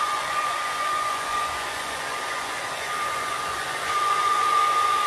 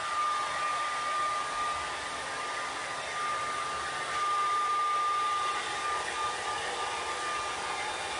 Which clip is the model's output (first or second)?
first